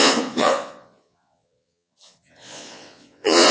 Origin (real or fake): fake